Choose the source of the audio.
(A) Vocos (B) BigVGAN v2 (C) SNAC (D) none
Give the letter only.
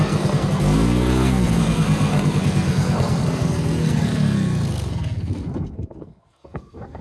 C